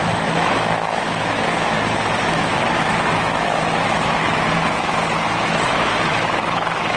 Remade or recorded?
remade